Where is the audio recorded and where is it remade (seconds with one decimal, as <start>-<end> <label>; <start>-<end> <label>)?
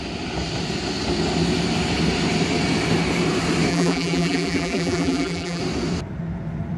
0.0-3.7 recorded; 3.7-5.6 remade; 5.6-6.8 recorded